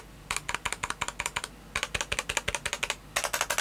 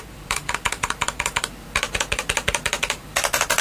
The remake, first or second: second